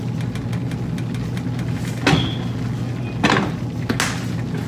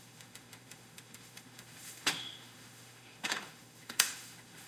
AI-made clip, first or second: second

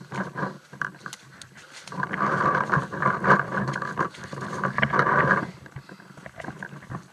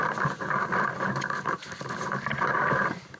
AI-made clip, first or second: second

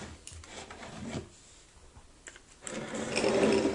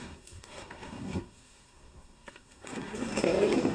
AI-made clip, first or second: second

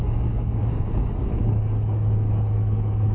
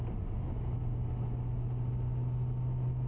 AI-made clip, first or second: first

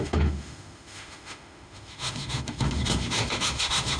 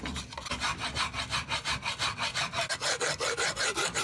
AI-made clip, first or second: first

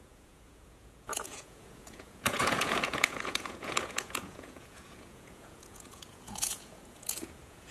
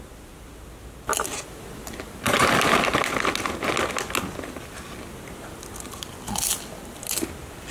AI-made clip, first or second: first